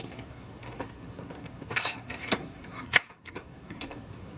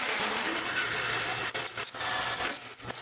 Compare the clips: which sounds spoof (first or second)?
first